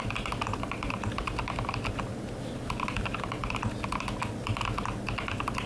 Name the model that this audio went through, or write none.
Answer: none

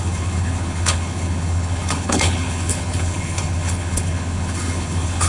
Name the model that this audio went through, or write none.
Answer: codec, HILCodec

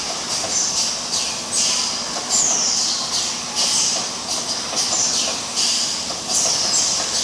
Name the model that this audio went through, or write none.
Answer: none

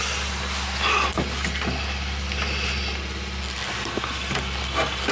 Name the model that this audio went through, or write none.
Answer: none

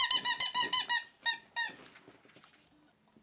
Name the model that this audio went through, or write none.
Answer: none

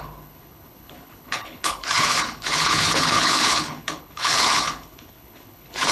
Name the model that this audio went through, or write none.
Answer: codec, HILCodec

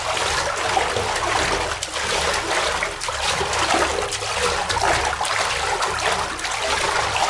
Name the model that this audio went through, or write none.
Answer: none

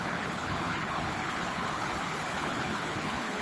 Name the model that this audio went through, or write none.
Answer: codec, HILCodec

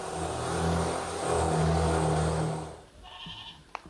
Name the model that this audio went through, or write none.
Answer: none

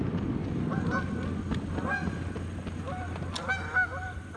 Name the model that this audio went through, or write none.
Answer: none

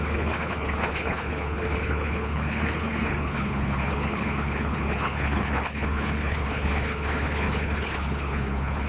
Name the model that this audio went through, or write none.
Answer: codec, HILCodec